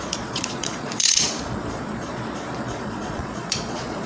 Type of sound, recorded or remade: remade